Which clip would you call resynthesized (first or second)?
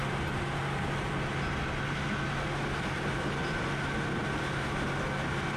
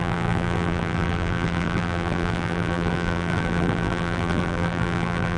second